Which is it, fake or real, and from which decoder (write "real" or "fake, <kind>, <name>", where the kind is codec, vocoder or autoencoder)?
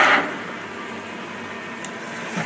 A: fake, vocoder, BigVGAN v2